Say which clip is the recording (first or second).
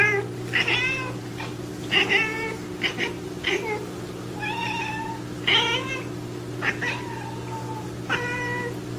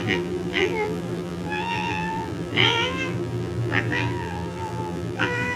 first